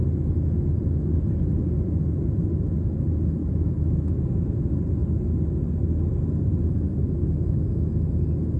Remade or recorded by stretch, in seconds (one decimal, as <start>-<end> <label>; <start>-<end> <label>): 0.0-3.4 recorded; 3.4-4.6 remade; 4.6-7.2 recorded; 7.2-7.9 remade; 7.9-8.6 recorded